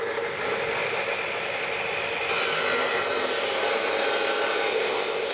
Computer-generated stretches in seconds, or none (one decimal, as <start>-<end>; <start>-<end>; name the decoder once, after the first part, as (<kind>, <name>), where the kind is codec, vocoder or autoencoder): 4.7-5.3 (codec, ZipCodec)